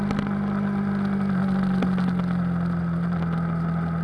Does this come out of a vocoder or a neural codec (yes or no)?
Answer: no